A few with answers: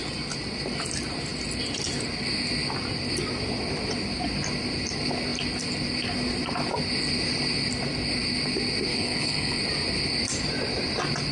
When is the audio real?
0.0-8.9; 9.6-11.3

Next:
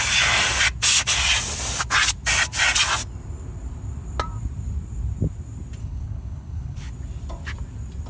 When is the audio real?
0.0-5.8; 6.9-8.1

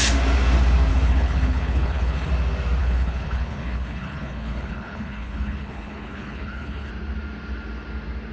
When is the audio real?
0.0-0.9; 2.3-2.8; 6.9-8.3

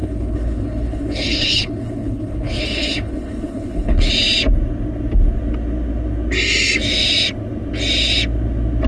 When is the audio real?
4.1-8.9

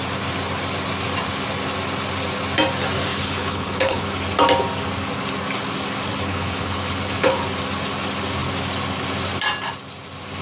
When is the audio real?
0.0-3.1; 4.0-6.3; 7.4-10.4